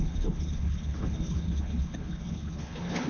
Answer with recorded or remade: remade